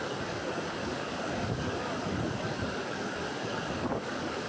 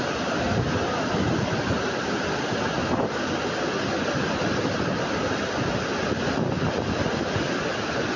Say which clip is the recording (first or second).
second